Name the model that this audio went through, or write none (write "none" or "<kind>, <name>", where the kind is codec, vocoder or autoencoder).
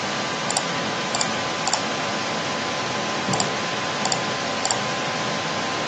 vocoder, BigVGAN v2